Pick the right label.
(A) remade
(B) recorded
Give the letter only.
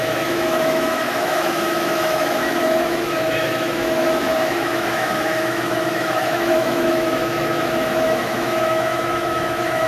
A